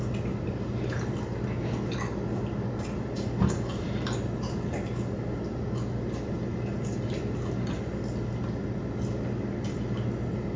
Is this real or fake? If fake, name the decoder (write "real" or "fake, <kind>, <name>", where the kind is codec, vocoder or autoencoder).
real